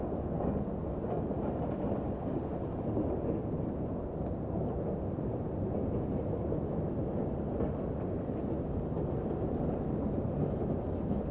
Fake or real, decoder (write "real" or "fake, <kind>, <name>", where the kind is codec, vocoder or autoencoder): real